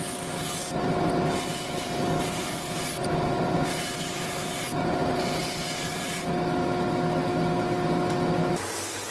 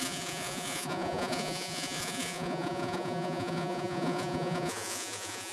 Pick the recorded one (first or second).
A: first